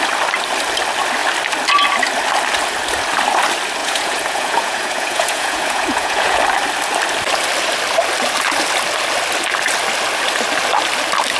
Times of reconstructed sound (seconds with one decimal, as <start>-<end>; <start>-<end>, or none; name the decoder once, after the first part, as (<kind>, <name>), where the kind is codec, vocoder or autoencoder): 3.8-6.4 (vocoder, Vocos)